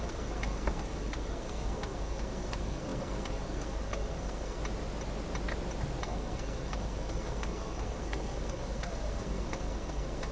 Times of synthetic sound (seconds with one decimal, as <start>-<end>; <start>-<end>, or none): 0.0-4.6; 6.0-10.3